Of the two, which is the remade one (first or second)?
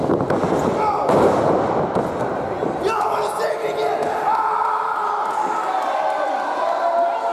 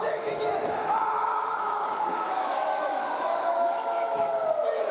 second